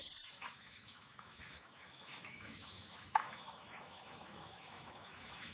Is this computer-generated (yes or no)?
yes